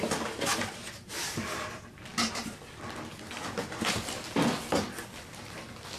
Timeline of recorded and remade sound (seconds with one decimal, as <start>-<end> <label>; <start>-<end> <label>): 0.0-6.0 recorded